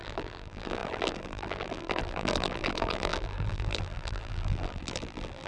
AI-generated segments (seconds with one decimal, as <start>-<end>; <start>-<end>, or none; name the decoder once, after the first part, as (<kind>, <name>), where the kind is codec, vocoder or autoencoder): 0.0-5.5 (vocoder, BigVGAN v2)